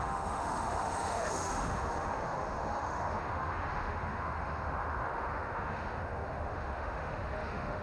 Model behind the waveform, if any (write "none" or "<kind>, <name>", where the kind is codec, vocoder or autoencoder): autoencoder, DAC-VAE